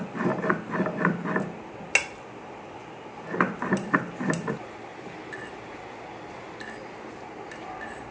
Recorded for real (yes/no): yes